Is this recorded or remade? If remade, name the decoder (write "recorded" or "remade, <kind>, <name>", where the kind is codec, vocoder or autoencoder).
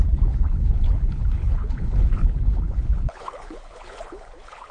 remade, codec, HILCodec